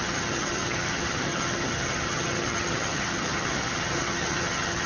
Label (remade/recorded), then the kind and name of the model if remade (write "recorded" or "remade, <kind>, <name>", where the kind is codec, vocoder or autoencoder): remade, vocoder, HiFi-GAN